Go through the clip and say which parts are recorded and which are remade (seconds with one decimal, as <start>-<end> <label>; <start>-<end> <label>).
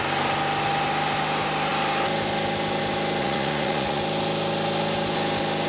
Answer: 0.0-3.2 recorded; 3.2-4.0 remade; 4.0-5.7 recorded